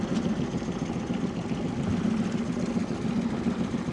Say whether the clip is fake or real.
real